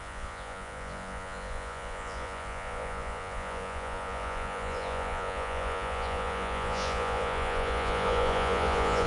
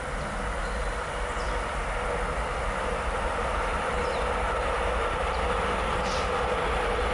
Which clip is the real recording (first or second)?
second